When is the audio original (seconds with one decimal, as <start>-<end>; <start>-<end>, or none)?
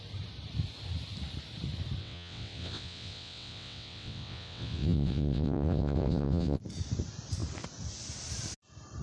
0.0-2.0; 6.6-9.0